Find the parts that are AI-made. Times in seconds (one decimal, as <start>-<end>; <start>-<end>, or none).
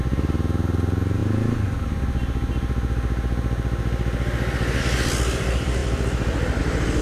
none